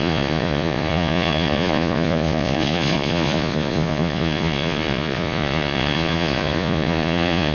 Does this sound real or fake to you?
fake